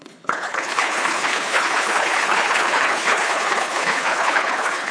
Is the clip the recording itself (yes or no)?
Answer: no